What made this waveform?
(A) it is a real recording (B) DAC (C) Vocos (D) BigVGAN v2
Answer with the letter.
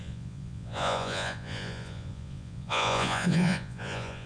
C